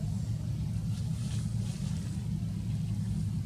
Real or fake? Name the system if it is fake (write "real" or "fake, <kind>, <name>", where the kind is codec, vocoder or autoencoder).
real